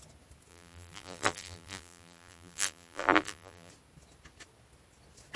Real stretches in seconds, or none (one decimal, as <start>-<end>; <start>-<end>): 0.0-0.5; 3.7-5.4